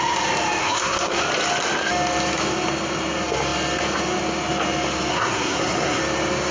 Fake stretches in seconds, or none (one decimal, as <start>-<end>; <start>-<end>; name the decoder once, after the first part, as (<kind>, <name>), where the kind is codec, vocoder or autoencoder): 0.6-1.2 (codec, SNAC); 5.1-6.0